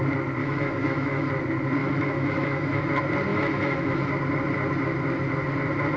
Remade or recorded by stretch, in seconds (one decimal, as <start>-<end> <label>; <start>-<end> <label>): 0.0-0.4 recorded; 0.4-1.3 remade; 1.3-1.8 recorded; 1.8-2.8 remade; 2.8-3.3 recorded; 3.3-4.1 remade; 4.1-6.0 recorded